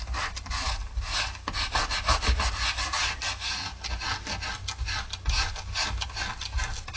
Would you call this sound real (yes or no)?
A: yes